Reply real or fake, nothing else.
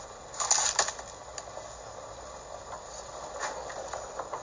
real